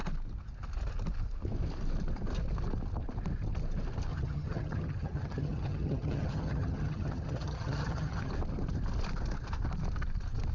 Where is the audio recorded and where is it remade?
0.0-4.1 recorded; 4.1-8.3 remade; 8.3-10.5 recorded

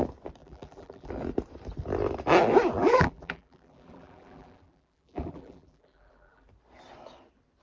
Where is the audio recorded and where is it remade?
0.0-0.4 recorded; 0.4-1.1 remade; 1.1-2.8 recorded; 2.8-6.5 remade; 6.5-7.6 recorded

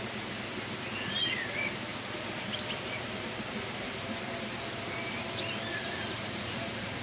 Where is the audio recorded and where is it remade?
0.0-5.7 recorded; 5.7-7.0 remade

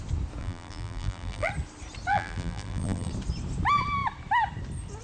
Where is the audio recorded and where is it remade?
0.0-0.4 recorded; 0.4-1.5 remade; 1.5-2.1 recorded; 2.1-3.1 remade; 3.1-5.0 recorded